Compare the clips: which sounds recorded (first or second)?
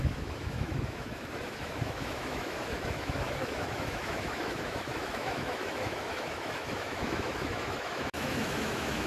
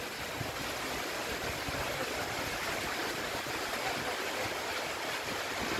second